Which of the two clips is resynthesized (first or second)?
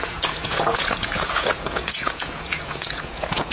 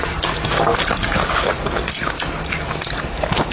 first